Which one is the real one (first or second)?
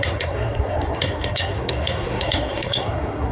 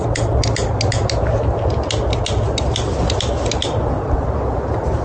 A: second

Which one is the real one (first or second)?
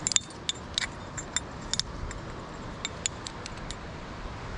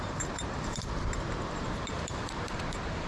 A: first